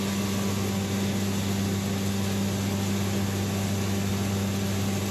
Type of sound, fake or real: real